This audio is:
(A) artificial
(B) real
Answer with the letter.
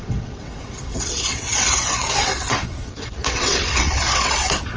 A